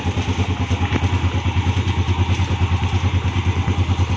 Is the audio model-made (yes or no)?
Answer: no